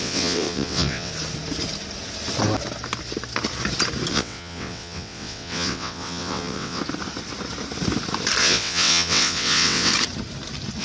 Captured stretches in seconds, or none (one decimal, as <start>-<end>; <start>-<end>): 1.1-4.1; 6.8-8.4; 9.9-10.8